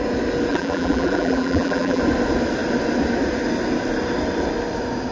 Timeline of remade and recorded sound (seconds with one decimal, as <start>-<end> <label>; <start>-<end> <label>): 0.0-0.5 recorded; 0.5-2.0 remade; 2.0-5.1 recorded